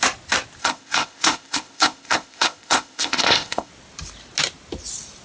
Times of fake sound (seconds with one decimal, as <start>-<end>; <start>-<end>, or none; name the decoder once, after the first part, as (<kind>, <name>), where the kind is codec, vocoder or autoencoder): 0.6-3.7 (codec, ZipCodec)